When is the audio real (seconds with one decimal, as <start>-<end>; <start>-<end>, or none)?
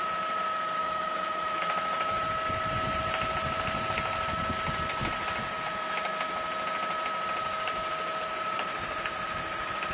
0.0-0.8; 2.2-9.9